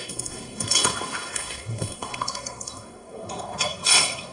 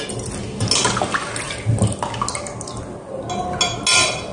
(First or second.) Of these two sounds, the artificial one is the first